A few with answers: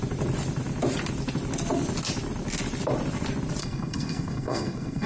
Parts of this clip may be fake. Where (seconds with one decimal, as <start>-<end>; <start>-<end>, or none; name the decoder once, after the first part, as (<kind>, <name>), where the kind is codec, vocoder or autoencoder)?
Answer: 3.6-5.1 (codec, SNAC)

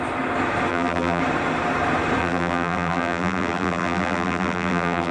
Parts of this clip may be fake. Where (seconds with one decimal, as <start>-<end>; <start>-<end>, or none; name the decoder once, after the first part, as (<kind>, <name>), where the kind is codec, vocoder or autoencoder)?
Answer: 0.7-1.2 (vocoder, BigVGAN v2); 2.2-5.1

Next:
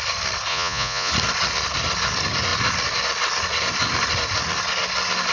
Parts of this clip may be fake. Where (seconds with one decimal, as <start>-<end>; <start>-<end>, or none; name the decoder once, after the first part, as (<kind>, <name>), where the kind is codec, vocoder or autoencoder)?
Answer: 0.5-1.1 (vocoder, Vocos)

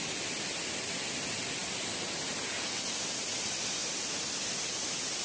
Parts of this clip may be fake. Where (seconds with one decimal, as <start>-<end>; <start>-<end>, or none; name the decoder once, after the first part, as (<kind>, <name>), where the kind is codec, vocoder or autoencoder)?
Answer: none

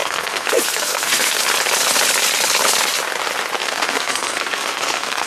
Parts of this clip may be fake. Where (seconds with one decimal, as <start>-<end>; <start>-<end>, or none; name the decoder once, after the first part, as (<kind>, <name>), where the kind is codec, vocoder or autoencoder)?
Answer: 0.0-1.4 (codec, SNAC); 3.6-5.3

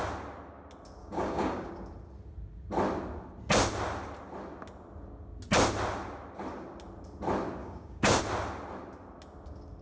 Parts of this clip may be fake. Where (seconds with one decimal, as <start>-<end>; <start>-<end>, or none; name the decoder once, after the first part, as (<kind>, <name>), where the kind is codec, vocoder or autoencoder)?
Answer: 1.0-1.7 (codec, DAC); 7.6-8.2